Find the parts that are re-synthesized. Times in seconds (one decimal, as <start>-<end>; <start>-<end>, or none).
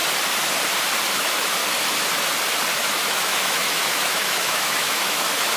1.1-1.6; 2.7-5.6